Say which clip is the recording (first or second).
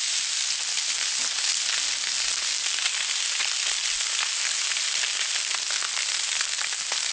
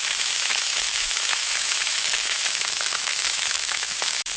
first